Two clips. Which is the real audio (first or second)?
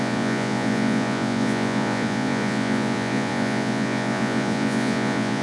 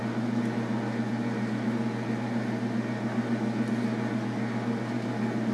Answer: second